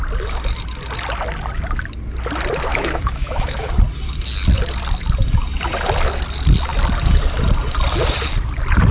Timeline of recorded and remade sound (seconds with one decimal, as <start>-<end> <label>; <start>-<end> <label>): 0.0-2.7 recorded; 2.7-3.7 remade; 3.7-8.9 recorded

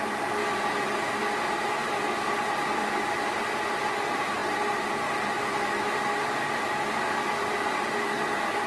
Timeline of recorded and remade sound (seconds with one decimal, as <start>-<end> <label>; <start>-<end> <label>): 0.0-2.8 remade; 2.8-3.5 recorded; 3.5-8.7 remade

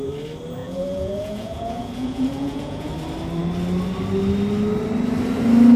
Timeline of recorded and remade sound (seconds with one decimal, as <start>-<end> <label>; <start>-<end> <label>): 0.0-0.6 recorded; 0.6-2.9 remade; 2.9-5.8 recorded

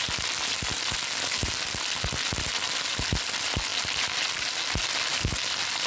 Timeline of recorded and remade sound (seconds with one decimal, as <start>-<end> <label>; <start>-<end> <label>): 0.0-5.9 recorded

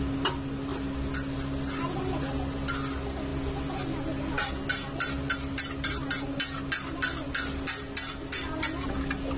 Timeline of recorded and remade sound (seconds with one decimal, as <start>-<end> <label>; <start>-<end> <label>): 0.0-9.4 recorded

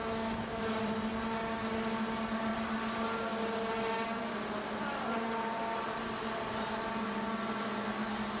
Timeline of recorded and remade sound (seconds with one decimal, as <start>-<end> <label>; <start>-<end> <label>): 0.0-0.6 remade; 0.6-8.4 recorded

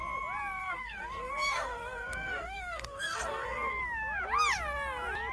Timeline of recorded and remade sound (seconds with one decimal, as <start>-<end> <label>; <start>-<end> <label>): 0.0-0.6 recorded; 0.6-3.8 remade; 3.8-5.3 recorded